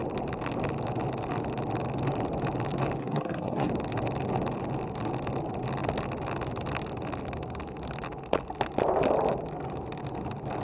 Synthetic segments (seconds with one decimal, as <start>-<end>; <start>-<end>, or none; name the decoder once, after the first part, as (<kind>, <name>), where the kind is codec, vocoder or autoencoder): 3.0-3.7 (codec, SNAC)